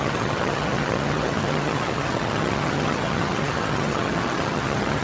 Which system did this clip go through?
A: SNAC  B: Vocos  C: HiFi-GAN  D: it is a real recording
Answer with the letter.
C